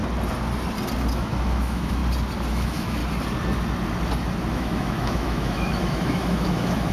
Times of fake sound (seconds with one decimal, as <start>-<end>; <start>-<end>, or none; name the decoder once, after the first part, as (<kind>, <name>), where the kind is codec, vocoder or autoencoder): 1.1-2.0 (autoencoder, DAC-VAE); 2.5-3.0; 4.5-6.9